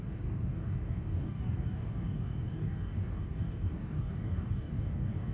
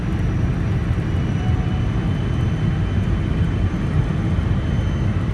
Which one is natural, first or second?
second